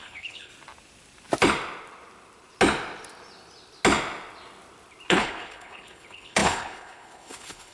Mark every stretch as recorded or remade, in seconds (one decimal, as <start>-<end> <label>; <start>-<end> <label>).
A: 0.0-0.5 remade; 0.5-5.1 recorded; 5.1-7.7 remade